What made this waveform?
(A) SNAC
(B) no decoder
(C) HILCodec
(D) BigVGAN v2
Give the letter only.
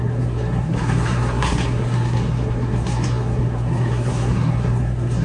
A